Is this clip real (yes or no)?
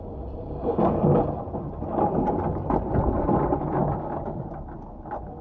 yes